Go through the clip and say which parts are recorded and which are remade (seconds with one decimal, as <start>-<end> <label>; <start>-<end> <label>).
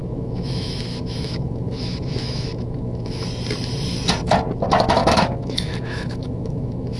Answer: 0.0-3.3 remade; 3.3-5.0 recorded; 5.0-7.0 remade